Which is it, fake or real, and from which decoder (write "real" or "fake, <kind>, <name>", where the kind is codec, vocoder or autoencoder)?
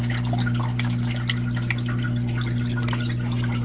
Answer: real